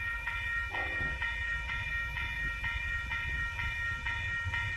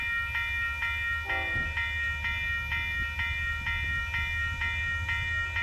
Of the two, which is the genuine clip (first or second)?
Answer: second